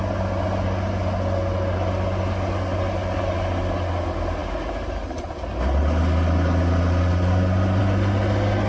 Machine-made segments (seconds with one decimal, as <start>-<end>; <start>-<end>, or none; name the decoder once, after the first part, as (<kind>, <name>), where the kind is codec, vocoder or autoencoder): none